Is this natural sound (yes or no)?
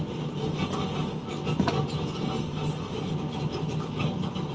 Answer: yes